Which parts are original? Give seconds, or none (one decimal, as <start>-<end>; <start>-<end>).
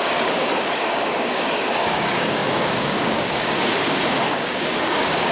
none